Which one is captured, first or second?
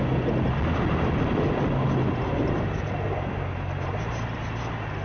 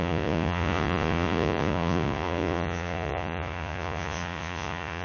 first